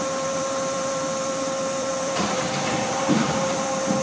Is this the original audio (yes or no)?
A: no